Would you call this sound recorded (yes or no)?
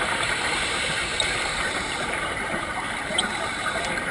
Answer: no